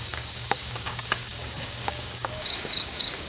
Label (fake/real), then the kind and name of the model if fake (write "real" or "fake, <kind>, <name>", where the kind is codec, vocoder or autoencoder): fake, codec, DAC